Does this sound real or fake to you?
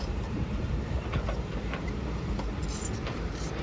fake